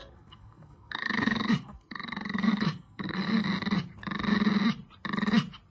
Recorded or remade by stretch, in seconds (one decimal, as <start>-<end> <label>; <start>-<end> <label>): 0.0-3.4 remade; 3.4-5.7 recorded